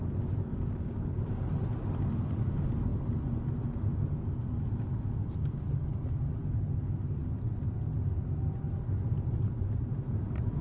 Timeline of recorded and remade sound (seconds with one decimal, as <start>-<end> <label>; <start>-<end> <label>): 0.0-0.5 recorded; 0.5-1.0 remade; 1.0-10.6 recorded